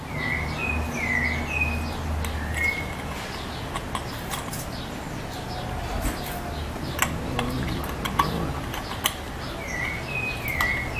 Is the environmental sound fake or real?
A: real